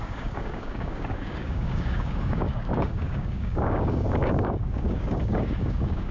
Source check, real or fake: fake